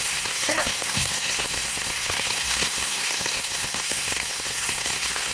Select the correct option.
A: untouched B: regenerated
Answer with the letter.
B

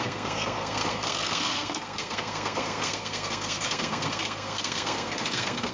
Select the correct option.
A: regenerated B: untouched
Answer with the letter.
A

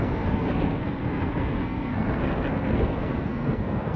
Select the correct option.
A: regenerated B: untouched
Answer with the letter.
A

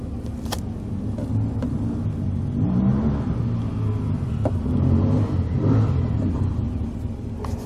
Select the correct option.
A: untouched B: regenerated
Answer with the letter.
A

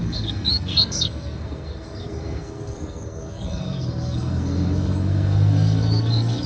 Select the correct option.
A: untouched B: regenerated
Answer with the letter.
B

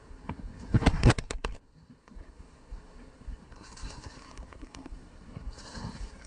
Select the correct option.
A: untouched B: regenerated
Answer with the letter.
B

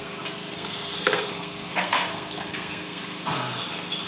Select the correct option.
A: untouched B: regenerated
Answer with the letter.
B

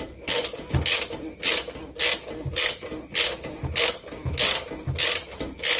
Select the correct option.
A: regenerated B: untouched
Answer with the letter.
B